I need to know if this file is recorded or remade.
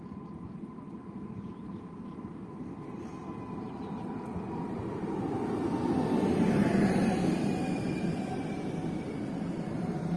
remade